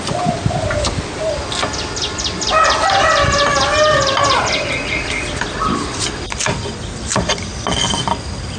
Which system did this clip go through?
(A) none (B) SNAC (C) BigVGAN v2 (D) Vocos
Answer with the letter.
A